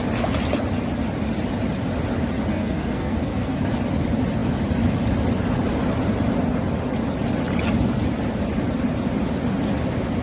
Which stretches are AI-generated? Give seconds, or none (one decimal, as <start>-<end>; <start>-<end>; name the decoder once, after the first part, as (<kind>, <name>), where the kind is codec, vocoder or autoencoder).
2.5-3.6 (codec, SNAC)